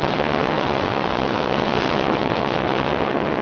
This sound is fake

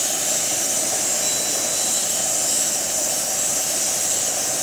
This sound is real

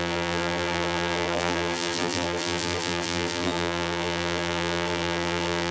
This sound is fake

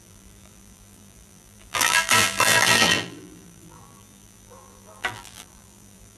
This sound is fake